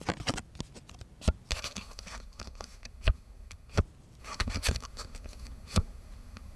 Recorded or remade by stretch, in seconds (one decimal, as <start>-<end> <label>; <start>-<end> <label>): 0.0-1.5 recorded; 1.5-3.8 remade; 3.8-4.2 recorded; 4.2-6.6 remade